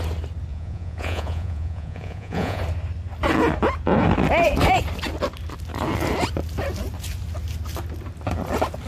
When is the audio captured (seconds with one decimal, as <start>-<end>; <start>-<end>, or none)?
0.0-0.5; 2.6-8.9